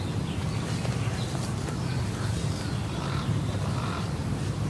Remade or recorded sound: recorded